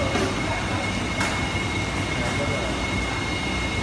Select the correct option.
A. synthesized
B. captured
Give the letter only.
B